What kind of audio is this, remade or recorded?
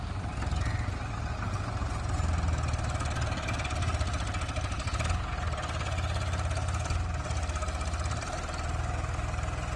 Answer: recorded